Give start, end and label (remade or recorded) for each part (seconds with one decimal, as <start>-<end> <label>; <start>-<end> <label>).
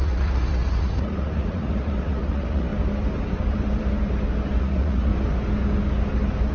0.0-2.7 remade; 2.7-4.6 recorded; 4.6-5.1 remade; 5.1-6.5 recorded